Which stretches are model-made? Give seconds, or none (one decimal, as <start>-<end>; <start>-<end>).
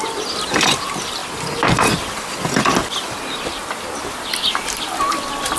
none